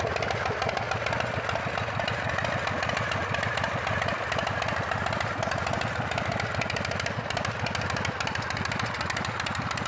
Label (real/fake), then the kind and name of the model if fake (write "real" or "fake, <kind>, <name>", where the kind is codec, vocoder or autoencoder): real